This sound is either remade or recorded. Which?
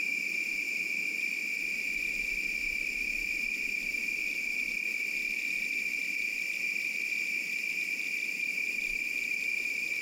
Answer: remade